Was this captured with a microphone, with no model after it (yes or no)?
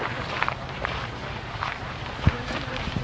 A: no